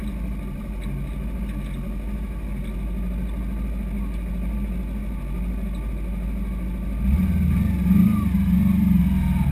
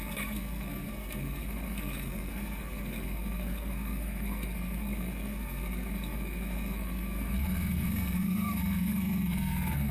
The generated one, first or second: second